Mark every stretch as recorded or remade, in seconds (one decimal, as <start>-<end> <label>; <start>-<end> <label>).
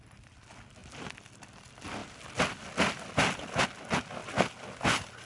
0.0-5.2 recorded